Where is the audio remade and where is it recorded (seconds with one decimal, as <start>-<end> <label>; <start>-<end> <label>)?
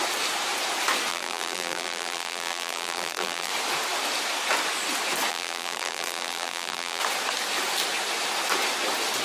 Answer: 0.0-1.1 recorded; 1.1-3.5 remade; 3.5-5.3 recorded; 5.3-7.0 remade; 7.0-9.2 recorded